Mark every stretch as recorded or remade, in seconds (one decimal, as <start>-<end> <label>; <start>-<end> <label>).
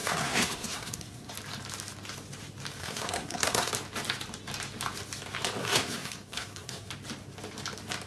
0.0-1.3 remade; 1.3-2.8 recorded; 2.8-3.7 remade; 3.7-5.6 recorded; 5.6-6.9 remade; 6.9-8.1 recorded